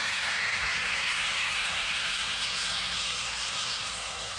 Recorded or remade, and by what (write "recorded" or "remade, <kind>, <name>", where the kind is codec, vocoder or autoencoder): remade, codec, SNAC